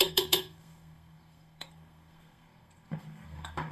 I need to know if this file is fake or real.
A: fake